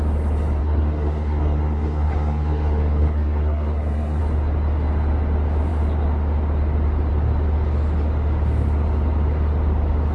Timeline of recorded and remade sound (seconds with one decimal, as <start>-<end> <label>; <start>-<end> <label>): 0.0-0.6 recorded; 0.6-4.2 remade; 4.2-10.1 recorded